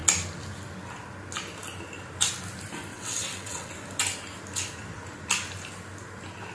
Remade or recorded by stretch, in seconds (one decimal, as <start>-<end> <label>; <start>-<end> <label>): 0.0-2.9 recorded; 2.9-3.7 remade; 3.7-6.5 recorded